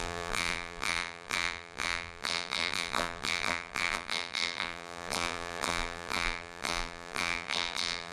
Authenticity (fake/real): fake